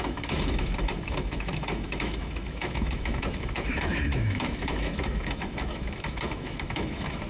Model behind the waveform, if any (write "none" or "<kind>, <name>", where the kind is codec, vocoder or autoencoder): autoencoder, DAC-VAE